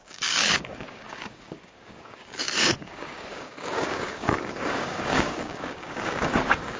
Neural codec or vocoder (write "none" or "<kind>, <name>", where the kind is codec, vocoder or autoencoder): codec, DAC